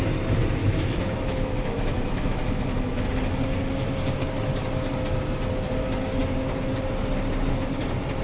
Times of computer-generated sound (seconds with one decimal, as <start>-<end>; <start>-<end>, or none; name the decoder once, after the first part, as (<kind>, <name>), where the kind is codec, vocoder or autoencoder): 0.6-3.1 (autoencoder, DAC-VAE)